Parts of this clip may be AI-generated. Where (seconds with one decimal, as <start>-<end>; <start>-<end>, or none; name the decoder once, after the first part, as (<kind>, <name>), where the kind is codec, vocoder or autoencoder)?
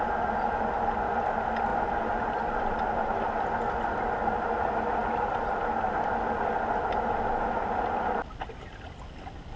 none